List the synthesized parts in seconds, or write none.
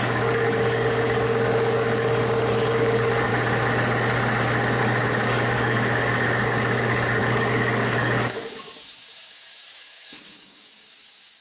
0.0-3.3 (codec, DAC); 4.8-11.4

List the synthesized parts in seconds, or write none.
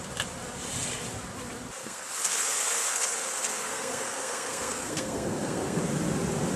1.8-5.8 (codec, SNAC)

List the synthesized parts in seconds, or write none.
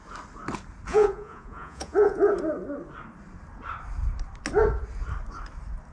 0.9-2.3 (vocoder, Vocos)